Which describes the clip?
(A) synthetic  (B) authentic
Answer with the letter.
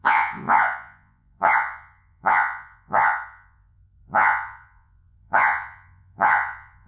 A